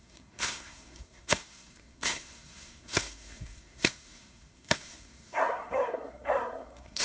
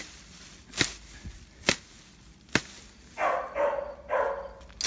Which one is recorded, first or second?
second